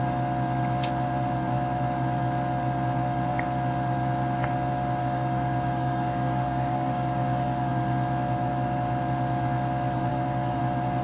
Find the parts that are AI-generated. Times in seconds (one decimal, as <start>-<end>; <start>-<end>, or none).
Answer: 5.0-7.7; 10.1-10.6